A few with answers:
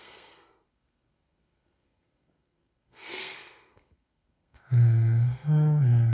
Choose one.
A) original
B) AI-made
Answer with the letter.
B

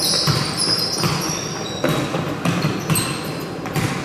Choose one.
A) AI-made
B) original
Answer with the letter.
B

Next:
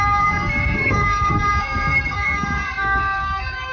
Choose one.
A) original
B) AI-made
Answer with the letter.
B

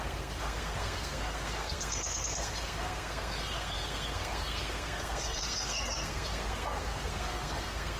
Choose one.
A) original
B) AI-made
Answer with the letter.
B